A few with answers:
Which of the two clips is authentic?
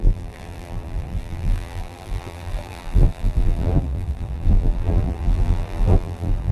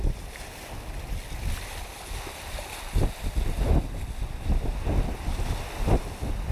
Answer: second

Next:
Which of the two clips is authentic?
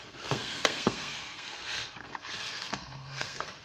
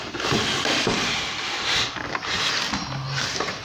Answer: second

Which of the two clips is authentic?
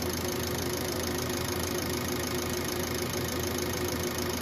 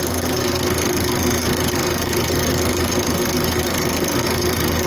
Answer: first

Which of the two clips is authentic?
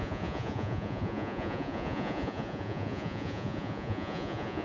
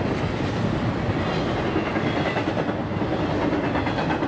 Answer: second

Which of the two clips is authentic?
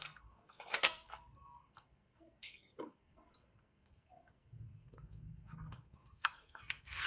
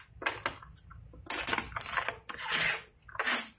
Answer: second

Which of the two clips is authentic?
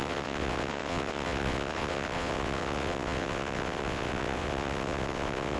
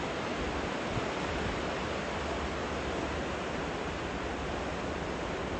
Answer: second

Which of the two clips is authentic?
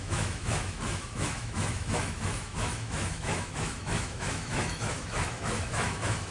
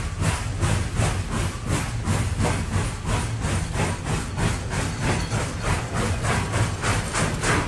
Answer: second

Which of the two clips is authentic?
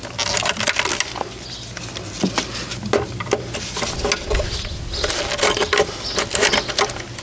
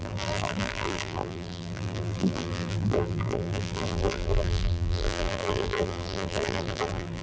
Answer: first